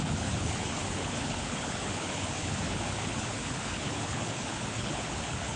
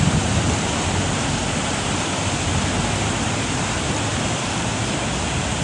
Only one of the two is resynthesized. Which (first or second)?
first